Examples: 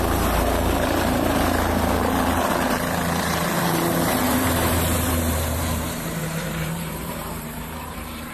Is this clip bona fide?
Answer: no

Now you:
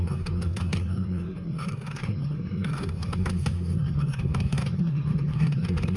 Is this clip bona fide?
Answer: no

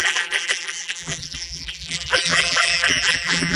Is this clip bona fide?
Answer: no